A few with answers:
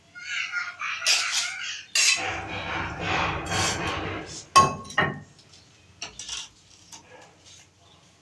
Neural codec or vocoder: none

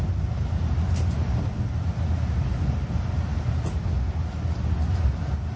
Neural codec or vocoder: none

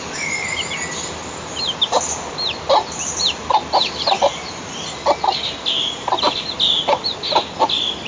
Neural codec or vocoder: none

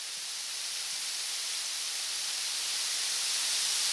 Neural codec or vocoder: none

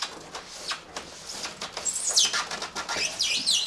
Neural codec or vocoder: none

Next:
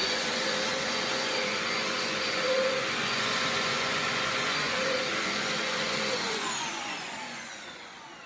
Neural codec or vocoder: vocoder, Vocos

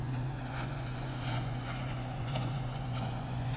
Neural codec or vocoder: vocoder, Vocos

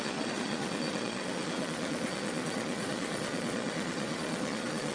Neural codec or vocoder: vocoder, Vocos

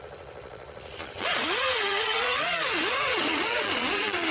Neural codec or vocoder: vocoder, Vocos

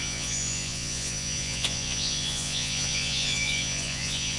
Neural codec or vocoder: vocoder, Vocos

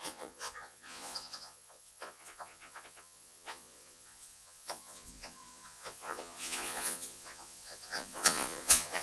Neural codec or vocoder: vocoder, Vocos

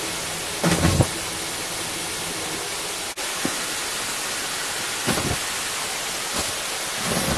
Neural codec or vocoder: none